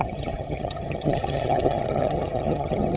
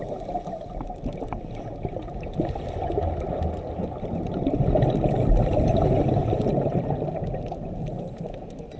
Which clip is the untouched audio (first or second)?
second